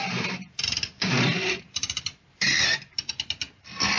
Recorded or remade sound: recorded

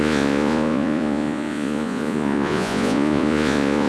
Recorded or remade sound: remade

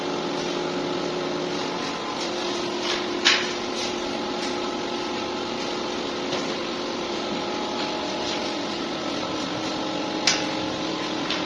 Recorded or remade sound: recorded